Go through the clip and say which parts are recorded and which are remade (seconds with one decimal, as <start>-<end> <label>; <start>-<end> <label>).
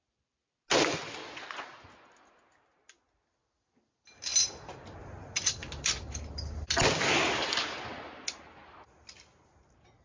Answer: 0.0-10.0 recorded